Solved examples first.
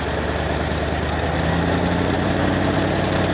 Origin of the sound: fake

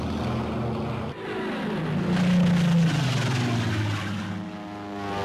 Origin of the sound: real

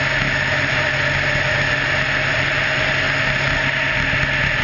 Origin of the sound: real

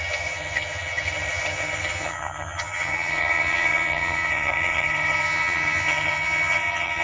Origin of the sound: fake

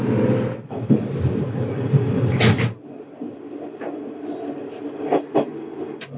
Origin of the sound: real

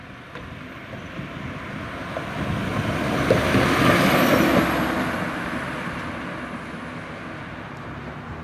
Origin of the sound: real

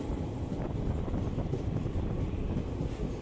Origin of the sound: real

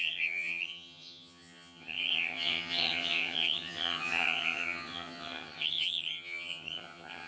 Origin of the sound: fake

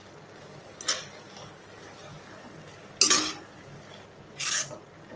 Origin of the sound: real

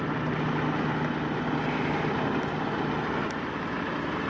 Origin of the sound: real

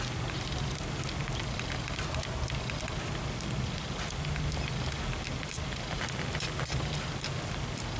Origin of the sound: real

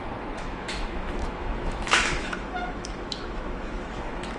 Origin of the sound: fake